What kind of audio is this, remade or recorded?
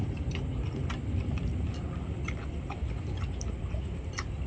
recorded